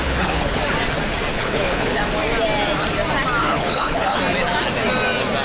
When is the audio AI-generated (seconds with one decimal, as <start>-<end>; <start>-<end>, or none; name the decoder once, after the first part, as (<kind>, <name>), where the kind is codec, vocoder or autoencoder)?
0.0-0.6 (codec, HILCodec); 1.3-2.0; 3.4-4.2